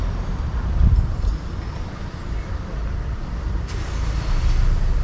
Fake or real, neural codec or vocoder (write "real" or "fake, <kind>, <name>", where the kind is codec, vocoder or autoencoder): fake, vocoder, BigVGAN v2